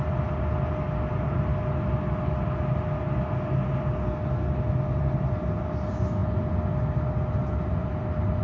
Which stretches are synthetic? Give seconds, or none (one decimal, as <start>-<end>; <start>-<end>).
none